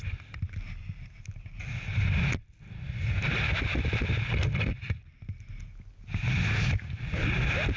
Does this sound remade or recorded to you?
recorded